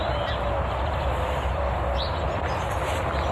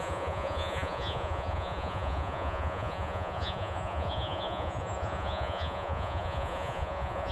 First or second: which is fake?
second